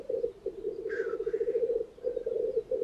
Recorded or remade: recorded